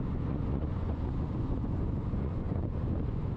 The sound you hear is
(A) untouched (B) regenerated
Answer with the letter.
B